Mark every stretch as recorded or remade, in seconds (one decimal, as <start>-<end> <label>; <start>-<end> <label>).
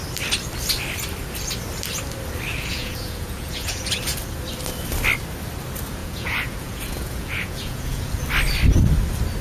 0.0-2.5 recorded; 2.5-3.9 remade; 3.9-6.0 recorded; 6.0-8.2 remade; 8.2-9.4 recorded